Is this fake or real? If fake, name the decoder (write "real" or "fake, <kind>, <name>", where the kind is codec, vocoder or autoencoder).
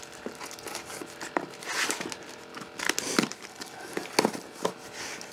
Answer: real